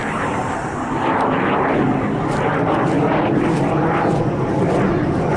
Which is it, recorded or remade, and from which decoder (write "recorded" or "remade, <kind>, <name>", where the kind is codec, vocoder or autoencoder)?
recorded